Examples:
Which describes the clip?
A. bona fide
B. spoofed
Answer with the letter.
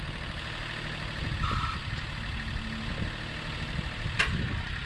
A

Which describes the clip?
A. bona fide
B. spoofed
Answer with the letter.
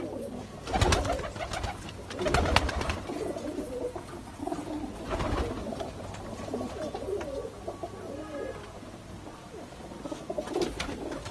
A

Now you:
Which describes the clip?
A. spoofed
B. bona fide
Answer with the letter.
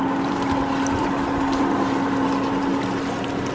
B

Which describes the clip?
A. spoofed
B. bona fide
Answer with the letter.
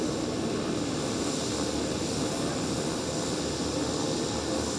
B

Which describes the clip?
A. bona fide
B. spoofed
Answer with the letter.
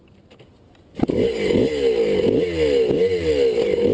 A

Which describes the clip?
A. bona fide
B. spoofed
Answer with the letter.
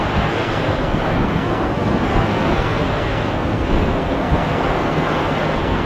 B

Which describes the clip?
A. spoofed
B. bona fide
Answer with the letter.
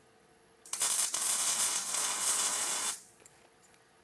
A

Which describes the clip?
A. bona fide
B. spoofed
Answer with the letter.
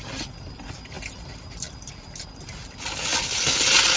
A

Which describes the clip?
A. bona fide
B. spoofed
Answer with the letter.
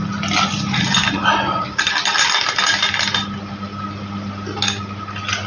A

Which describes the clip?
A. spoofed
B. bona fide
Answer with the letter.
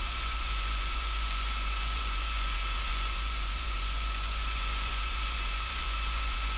A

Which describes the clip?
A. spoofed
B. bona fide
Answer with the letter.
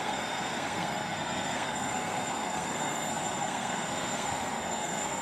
A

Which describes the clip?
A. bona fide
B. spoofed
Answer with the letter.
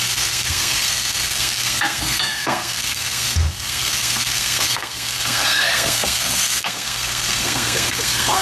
B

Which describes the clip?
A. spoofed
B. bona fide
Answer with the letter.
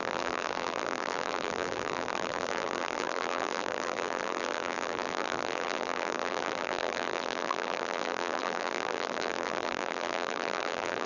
A